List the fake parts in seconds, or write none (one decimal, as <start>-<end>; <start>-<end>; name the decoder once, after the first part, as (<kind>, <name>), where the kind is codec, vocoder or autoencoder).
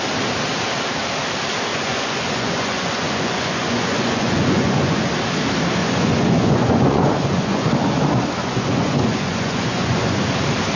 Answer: 1.7-5.0 (vocoder, Vocos); 5.8-7.7; 8.4-10.2